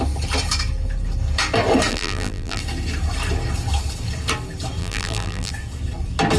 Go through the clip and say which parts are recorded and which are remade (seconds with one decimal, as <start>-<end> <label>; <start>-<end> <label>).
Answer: 0.0-1.9 recorded; 1.9-2.6 remade; 2.6-4.8 recorded; 4.8-5.5 remade; 5.5-6.4 recorded